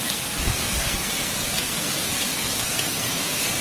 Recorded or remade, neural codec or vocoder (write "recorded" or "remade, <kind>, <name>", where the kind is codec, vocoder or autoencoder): remade, codec, SNAC